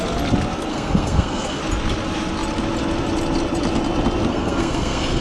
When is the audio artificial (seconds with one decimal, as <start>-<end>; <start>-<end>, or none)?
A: 0.7-1.6; 4.3-5.2